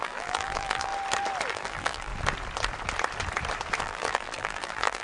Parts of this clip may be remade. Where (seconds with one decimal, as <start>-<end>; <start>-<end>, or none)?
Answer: 0.0-0.9; 1.5-2.1; 3.8-5.0